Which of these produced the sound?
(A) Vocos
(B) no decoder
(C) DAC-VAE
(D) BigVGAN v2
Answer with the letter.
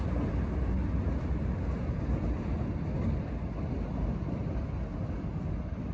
B